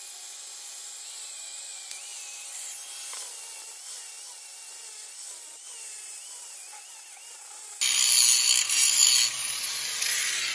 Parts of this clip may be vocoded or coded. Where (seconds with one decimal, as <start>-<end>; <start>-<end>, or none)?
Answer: none